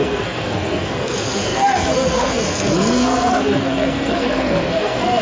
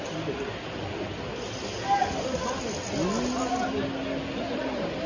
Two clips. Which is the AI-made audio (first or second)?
first